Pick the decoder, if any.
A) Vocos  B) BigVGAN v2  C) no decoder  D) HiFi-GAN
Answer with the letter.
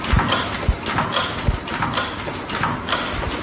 C